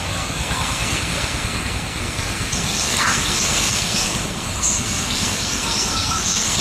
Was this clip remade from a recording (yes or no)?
yes